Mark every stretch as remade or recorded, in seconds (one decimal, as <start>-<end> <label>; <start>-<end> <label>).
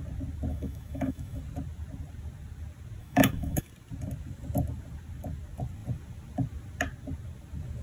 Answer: 0.0-0.5 recorded; 0.5-1.4 remade; 1.4-3.0 recorded; 3.0-3.7 remade; 3.7-7.8 recorded